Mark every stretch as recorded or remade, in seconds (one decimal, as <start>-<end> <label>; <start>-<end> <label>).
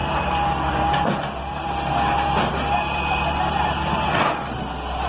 0.0-0.7 remade; 0.7-5.1 recorded